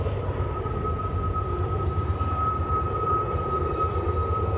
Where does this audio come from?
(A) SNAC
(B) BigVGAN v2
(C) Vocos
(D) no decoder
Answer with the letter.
B